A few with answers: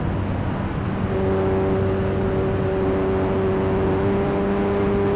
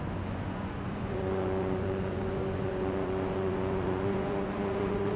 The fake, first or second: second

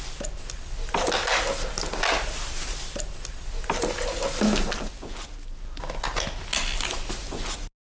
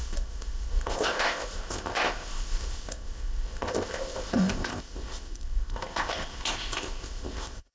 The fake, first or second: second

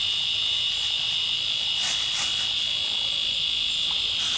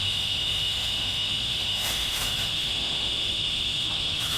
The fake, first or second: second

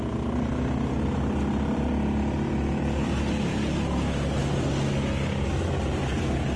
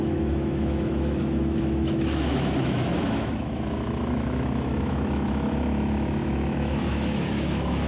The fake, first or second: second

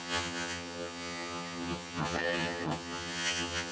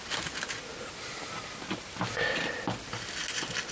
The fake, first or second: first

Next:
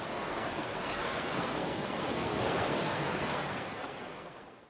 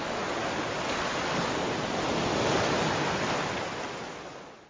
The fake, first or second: first